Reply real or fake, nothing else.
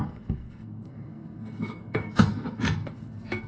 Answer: fake